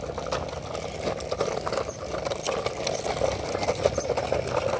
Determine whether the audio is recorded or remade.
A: recorded